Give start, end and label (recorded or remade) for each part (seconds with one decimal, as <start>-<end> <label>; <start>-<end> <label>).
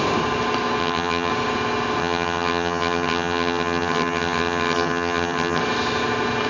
0.0-0.8 recorded; 0.8-1.3 remade; 1.3-2.0 recorded; 2.0-5.6 remade; 5.6-6.5 recorded